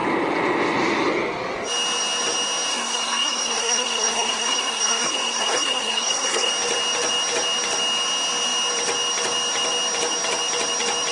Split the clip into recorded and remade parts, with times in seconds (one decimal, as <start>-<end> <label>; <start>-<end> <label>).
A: 0.0-2.7 recorded; 2.7-6.5 remade; 6.5-11.1 recorded